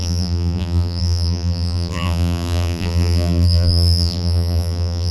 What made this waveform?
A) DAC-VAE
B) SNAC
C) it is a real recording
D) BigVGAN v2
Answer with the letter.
D